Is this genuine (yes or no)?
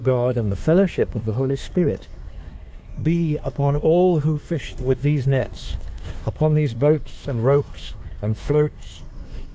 no